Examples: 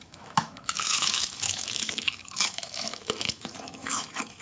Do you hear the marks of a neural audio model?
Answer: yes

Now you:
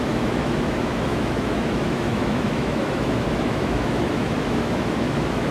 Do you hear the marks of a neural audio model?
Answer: yes